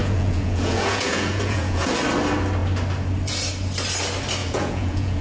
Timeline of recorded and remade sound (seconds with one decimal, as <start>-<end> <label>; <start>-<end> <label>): 0.0-1.9 remade; 1.9-4.4 recorded; 4.4-5.2 remade